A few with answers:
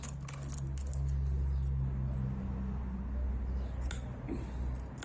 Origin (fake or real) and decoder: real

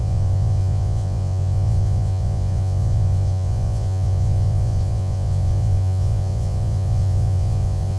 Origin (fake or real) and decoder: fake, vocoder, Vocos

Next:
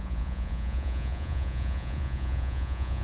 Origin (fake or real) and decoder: fake, vocoder, Vocos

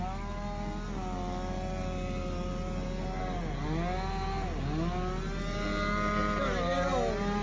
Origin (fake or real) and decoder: real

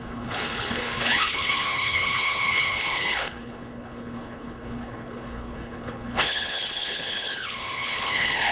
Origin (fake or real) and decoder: fake, codec, HILCodec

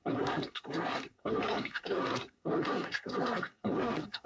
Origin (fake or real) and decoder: fake, codec, SNAC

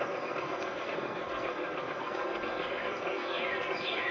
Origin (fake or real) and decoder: fake, codec, SNAC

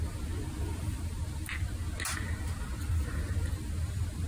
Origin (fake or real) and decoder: real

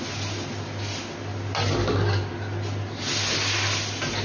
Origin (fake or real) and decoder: real